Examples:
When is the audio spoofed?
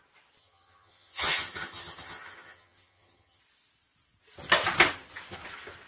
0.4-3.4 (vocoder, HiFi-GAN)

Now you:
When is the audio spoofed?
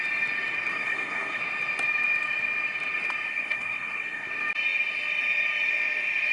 0.7-1.4 (codec, SNAC); 3.3-4.3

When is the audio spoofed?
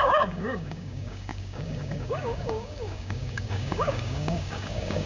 0.0-5.1 (codec, DAC)